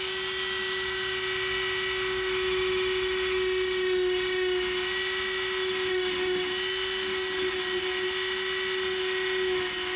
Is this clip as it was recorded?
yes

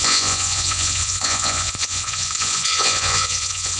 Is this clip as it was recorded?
no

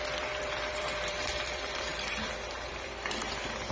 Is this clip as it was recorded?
no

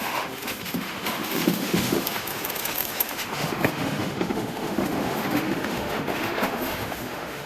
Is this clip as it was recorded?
no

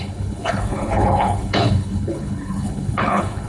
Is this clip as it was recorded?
no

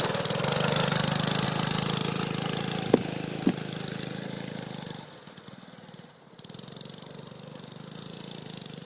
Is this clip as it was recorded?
yes